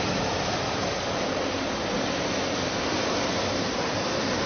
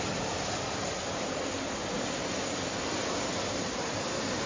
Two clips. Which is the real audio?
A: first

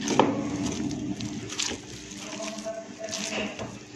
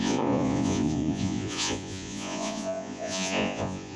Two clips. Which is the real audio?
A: first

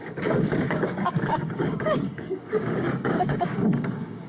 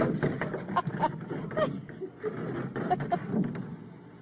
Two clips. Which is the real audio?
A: second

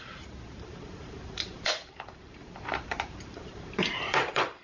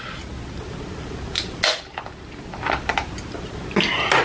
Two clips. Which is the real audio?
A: second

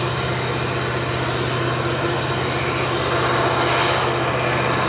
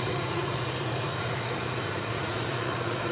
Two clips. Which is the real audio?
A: first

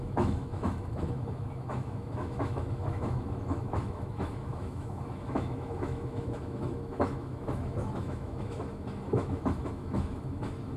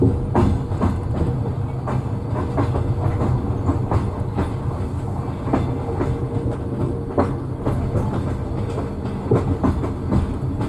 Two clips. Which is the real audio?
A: second